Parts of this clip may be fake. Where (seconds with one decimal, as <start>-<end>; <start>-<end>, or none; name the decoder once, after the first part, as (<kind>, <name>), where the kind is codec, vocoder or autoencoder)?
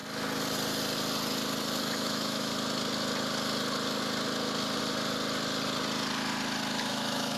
1.8-2.5 (autoencoder, DAC-VAE); 6.9-7.4